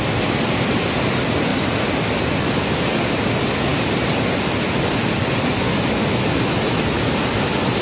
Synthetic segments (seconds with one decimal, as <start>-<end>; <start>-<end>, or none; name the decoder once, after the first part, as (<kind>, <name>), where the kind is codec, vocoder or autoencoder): none